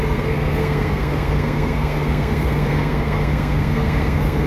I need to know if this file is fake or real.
fake